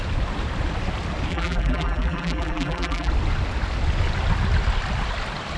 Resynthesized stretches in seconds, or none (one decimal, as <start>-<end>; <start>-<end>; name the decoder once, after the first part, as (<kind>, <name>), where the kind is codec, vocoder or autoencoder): 1.3-3.1 (vocoder, BigVGAN v2)